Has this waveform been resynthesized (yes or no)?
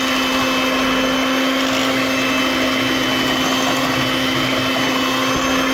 no